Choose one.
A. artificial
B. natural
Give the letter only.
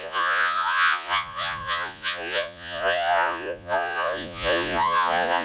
A